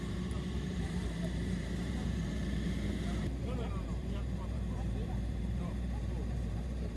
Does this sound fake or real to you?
fake